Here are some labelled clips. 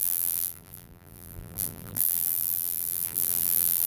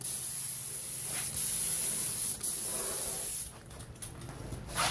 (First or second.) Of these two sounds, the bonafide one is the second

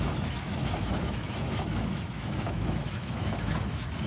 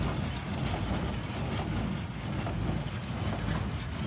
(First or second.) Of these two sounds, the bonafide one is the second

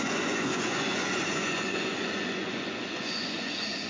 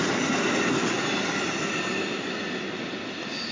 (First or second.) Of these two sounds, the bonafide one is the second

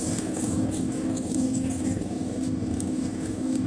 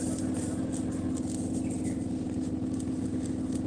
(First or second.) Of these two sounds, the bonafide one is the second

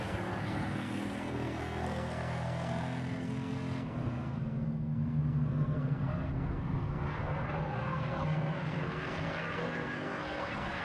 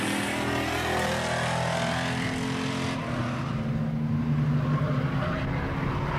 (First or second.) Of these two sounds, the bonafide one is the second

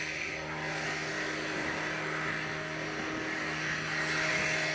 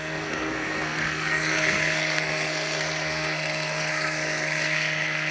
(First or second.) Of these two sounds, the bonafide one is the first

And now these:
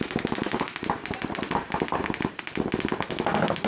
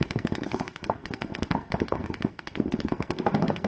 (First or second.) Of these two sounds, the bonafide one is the first